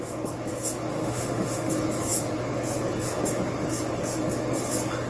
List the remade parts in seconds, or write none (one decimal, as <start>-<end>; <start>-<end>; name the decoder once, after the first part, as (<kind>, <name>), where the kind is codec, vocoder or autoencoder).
0.9-1.7 (autoencoder, DAC-VAE)